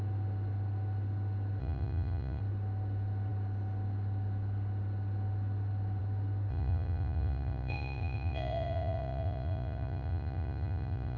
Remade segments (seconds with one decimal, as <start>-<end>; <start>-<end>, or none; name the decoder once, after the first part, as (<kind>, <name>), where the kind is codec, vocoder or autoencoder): 1.6-2.4 (vocoder, Vocos); 6.5-11.2